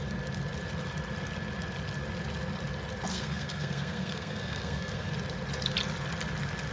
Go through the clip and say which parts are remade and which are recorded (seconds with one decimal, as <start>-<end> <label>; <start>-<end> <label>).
0.0-3.1 recorded; 3.1-5.1 remade; 5.1-6.7 recorded